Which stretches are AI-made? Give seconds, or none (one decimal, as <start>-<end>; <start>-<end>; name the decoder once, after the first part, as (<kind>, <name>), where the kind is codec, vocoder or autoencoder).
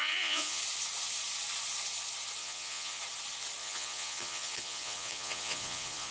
0.0-0.6 (vocoder, Vocos); 2.4-3.0; 3.6-6.1